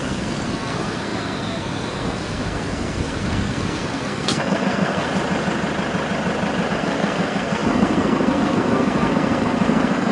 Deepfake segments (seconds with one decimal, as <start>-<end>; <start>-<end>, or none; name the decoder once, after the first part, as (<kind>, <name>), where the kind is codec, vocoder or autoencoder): 0.0-5.1 (codec, SNAC); 6.7-10.1